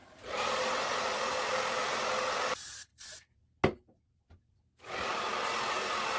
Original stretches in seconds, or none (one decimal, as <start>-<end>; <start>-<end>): 1.1-6.2